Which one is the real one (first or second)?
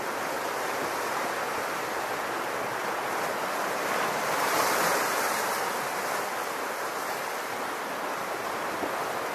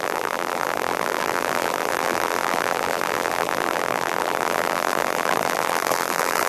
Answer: first